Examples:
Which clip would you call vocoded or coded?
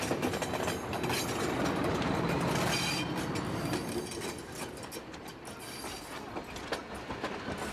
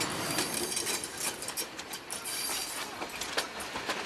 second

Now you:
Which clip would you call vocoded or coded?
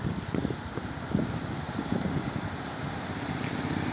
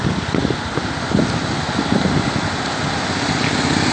first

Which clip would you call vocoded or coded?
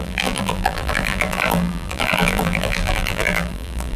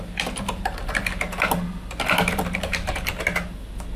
first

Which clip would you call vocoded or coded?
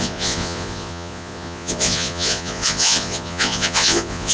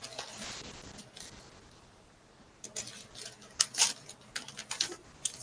first